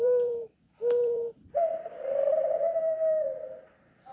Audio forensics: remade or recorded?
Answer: remade